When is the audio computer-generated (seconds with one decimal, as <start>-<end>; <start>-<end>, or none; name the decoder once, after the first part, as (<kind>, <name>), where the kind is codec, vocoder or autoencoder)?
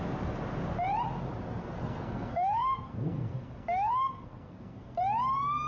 1.6-5.0 (codec, SNAC)